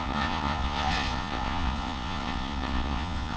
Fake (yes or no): yes